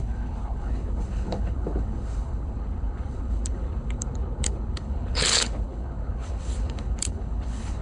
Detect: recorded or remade remade